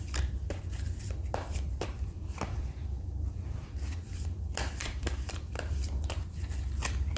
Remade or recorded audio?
remade